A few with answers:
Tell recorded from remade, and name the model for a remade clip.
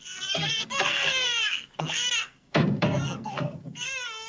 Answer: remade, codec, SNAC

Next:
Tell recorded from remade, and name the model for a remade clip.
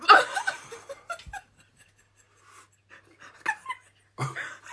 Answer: recorded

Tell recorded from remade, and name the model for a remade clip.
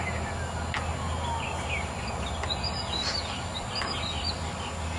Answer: recorded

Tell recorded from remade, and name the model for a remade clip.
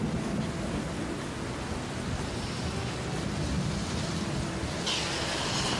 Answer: recorded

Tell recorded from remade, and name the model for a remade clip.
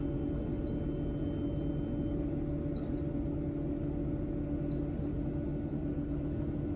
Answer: recorded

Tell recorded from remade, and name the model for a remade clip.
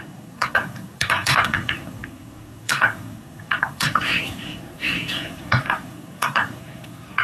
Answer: remade, codec, SNAC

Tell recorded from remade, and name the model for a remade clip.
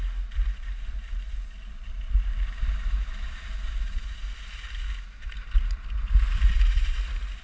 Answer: recorded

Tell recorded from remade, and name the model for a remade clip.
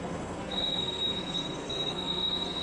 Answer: remade, codec, SNAC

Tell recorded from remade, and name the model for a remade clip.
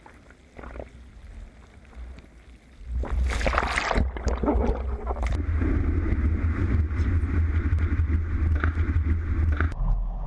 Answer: recorded